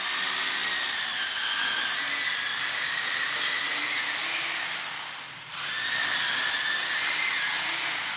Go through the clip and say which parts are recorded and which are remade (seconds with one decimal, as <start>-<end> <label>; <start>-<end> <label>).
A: 0.0-8.2 recorded